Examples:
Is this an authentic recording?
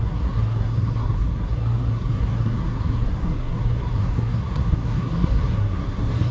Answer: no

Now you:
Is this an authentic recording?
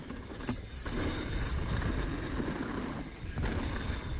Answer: yes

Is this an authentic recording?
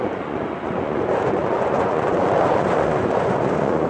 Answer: no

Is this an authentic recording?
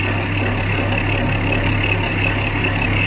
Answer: yes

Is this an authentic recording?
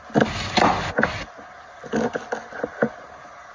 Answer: yes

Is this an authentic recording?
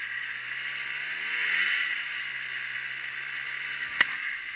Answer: yes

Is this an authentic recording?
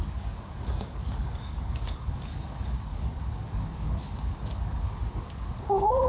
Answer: no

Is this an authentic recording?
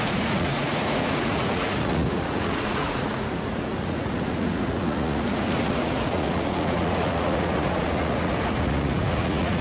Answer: no